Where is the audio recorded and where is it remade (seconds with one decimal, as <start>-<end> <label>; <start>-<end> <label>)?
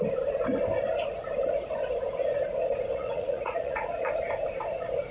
0.0-2.9 recorded; 2.9-4.1 remade; 4.1-5.1 recorded